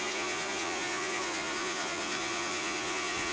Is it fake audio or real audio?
fake